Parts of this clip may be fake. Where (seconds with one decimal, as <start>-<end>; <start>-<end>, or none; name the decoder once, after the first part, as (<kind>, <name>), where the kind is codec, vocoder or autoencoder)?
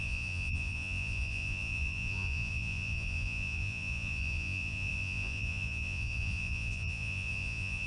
0.0-7.9 (vocoder, Vocos)